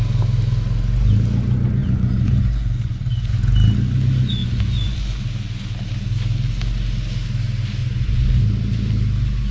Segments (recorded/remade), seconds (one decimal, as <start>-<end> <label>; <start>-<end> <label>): 0.0-1.8 recorded; 1.8-3.3 remade; 3.3-4.4 recorded; 4.4-5.2 remade; 5.2-7.8 recorded; 7.8-8.4 remade; 8.4-9.5 recorded